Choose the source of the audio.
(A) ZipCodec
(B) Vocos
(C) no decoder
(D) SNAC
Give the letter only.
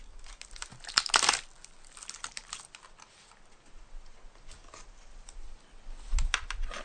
C